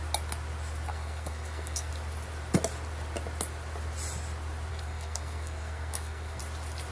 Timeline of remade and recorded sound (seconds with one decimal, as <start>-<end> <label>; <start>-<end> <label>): 0.0-0.9 recorded; 0.9-1.9 remade; 1.9-4.7 recorded; 4.7-6.4 remade; 6.4-6.9 recorded